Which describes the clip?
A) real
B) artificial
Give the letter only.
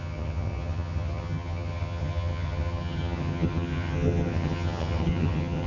B